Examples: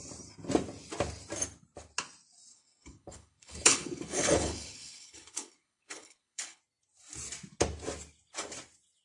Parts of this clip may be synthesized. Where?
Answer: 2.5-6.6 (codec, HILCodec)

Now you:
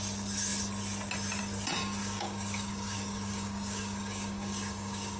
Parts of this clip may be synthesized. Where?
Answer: 2.0-5.2 (codec, DAC)

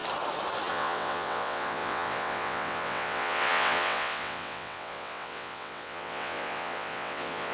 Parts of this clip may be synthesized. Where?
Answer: 0.7-7.5 (vocoder, WaveNeXt)

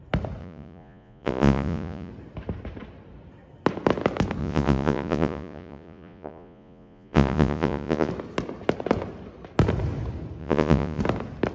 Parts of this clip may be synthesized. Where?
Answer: 0.4-2.1 (vocoder, Vocos); 4.4-8.1; 10.4-11.0

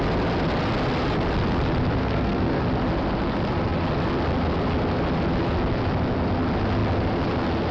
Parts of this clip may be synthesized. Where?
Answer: 2.0-2.6 (codec, SNAC)

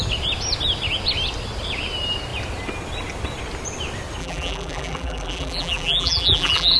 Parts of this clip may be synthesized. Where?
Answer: 4.2-6.8 (vocoder, BigVGAN v2)